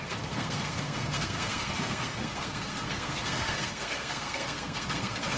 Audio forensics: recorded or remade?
remade